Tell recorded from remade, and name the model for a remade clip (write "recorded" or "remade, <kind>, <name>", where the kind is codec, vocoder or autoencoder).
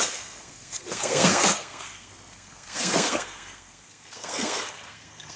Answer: remade, codec, SNAC